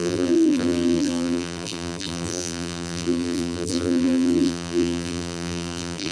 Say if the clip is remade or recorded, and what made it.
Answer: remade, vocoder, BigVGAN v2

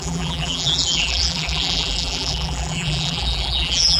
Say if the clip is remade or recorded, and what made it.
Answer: remade, vocoder, BigVGAN v2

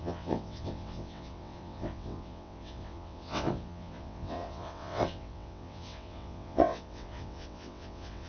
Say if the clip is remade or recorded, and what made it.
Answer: remade, vocoder, WaveNeXt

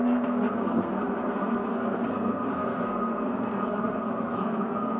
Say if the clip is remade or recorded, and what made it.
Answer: remade, codec, SNAC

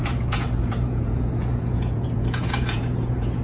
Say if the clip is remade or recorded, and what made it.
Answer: remade, vocoder, Vocos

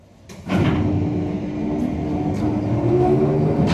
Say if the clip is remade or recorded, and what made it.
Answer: recorded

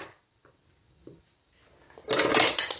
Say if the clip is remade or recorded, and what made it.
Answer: recorded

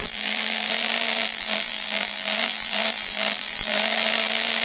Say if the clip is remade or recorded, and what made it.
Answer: remade, vocoder, BigVGAN v2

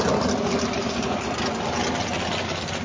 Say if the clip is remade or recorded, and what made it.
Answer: recorded